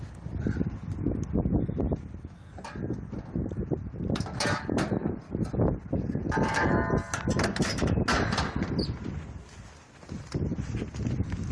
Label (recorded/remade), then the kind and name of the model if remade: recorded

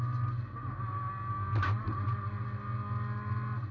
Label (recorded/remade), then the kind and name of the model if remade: recorded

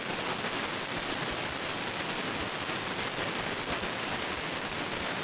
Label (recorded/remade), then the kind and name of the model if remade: recorded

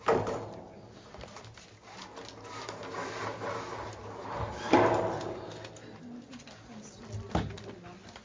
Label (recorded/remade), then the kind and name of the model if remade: recorded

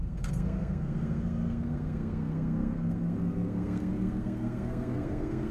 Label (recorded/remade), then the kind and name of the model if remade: remade, codec, SNAC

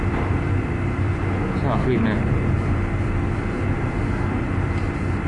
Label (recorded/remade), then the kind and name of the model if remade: remade, vocoder, BigVGAN v2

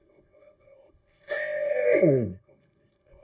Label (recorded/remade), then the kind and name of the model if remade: remade, codec, ZipCodec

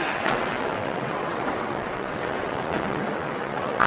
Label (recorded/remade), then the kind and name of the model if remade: remade, vocoder, WaveNeXt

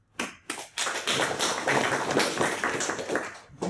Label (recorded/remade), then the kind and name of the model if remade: recorded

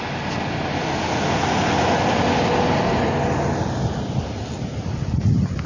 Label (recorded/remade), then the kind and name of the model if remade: recorded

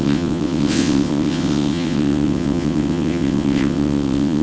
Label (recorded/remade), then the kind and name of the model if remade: remade, vocoder, WaveNeXt